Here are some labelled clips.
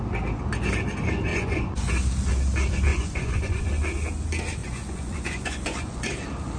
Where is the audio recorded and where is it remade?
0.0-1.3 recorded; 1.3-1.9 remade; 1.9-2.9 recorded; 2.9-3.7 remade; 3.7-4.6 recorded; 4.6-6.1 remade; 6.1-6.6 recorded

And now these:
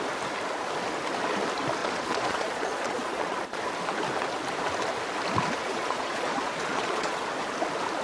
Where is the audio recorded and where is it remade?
0.0-1.8 recorded; 1.8-3.6 remade; 3.6-5.6 recorded; 5.6-7.2 remade; 7.2-8.0 recorded

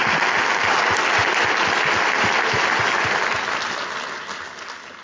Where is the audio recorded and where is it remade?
0.0-5.0 recorded

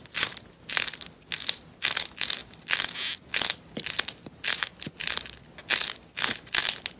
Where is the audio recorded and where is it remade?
0.0-7.0 recorded

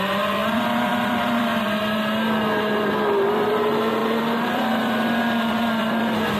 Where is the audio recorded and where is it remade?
0.0-0.4 recorded; 0.4-1.5 remade; 1.5-4.0 recorded; 4.0-4.9 remade; 4.9-6.4 recorded